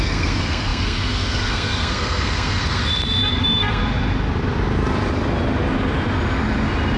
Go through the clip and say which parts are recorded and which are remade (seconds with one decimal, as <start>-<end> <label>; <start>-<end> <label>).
0.0-2.8 remade; 2.8-3.4 recorded; 3.4-3.8 remade; 3.8-7.0 recorded